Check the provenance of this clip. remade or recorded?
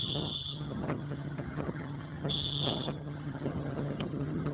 remade